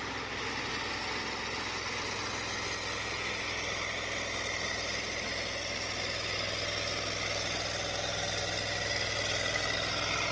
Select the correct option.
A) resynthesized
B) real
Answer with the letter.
B